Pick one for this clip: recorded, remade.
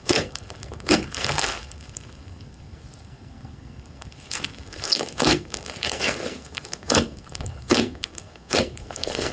remade